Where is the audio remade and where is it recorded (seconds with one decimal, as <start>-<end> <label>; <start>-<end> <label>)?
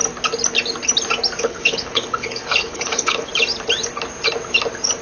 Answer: 0.0-1.4 recorded; 1.4-3.3 remade; 3.3-5.0 recorded